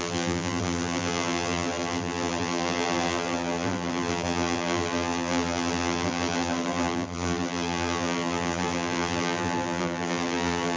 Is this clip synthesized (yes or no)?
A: yes